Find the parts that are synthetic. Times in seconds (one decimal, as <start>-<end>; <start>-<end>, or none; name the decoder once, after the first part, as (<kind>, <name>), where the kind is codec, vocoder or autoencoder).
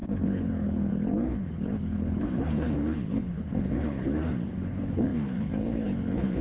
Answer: 0.0-6.4 (codec, HILCodec)